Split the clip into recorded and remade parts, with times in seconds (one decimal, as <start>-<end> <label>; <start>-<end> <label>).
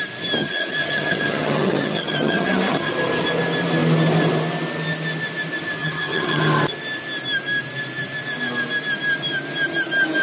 0.0-0.4 recorded; 0.4-2.9 remade; 2.9-5.8 recorded; 5.8-6.4 remade; 6.4-10.2 recorded